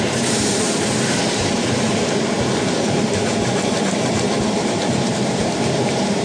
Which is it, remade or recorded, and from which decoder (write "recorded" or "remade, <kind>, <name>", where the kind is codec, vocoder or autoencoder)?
remade, vocoder, BigVGAN v2